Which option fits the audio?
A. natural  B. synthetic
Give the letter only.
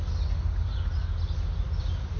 A